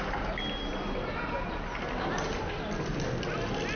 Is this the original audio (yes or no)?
yes